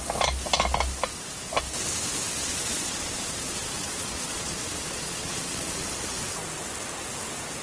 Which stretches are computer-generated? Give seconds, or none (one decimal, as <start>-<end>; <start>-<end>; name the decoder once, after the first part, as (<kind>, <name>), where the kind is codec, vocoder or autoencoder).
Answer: 2.4-5.9 (vocoder, Vocos)